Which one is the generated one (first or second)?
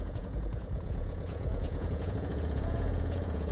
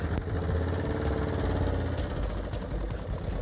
first